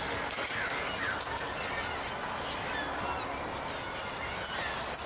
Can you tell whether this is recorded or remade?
recorded